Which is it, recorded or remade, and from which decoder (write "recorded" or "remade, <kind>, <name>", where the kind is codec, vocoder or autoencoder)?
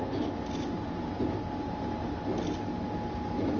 recorded